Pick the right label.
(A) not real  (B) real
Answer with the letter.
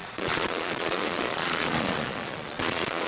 A